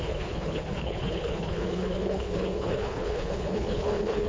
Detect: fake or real fake